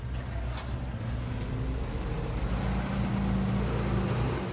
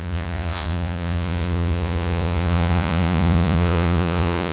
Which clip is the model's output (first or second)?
second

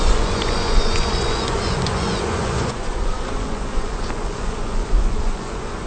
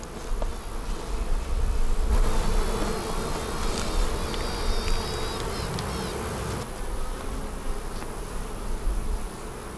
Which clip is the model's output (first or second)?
first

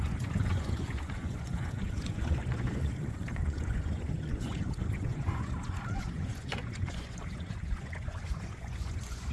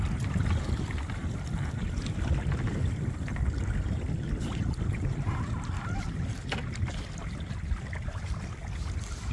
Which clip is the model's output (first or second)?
first